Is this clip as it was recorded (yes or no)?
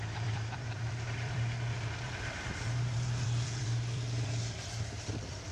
no